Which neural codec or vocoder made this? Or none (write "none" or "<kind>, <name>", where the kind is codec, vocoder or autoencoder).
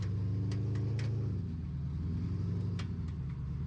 none